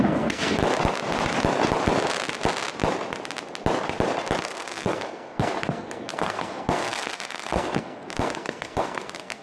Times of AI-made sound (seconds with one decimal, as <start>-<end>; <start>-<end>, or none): 0.0-0.6; 4.4-9.4